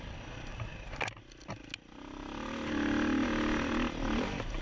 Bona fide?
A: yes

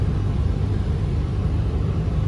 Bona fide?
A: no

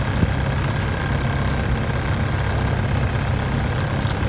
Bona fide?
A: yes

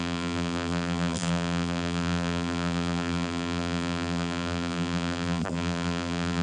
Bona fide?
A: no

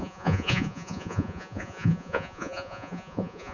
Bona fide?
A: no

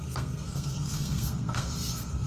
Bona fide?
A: no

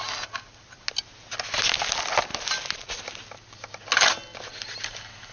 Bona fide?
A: yes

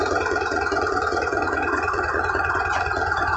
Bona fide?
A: no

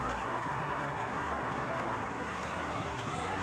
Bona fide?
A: no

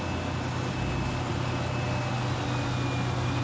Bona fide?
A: yes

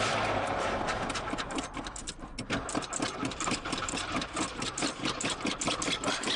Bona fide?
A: yes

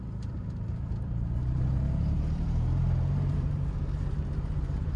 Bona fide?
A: no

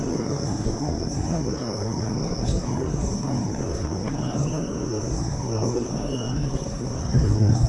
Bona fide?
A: no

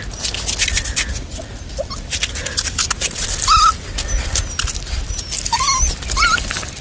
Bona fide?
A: yes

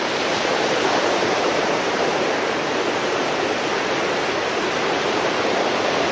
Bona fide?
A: yes